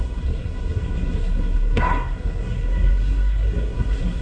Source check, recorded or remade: remade